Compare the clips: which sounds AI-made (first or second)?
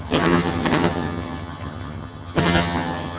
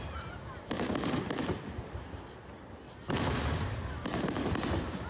first